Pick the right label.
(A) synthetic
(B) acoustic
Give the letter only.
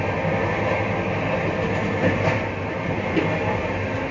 B